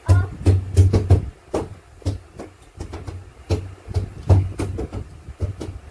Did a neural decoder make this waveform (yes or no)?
no